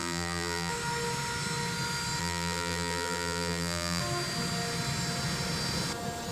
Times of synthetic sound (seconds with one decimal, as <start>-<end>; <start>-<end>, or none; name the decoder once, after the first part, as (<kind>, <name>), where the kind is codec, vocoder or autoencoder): 0.0-0.7 (vocoder, BigVGAN v2); 2.2-4.0